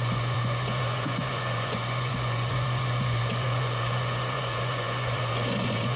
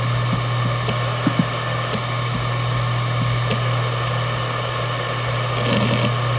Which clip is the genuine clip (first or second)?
second